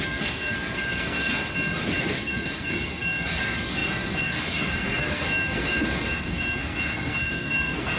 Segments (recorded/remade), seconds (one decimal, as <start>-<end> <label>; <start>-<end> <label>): 0.0-1.3 remade; 1.3-2.0 recorded; 2.0-8.0 remade